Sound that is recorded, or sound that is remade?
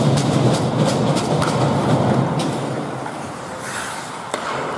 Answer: remade